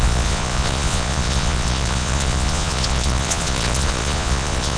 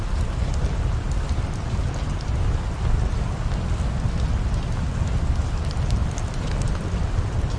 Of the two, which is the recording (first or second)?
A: second